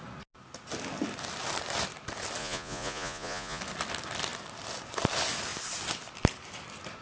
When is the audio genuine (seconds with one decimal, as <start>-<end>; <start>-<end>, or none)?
0.0-2.4; 3.6-7.0